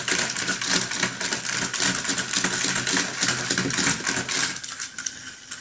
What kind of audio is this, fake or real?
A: real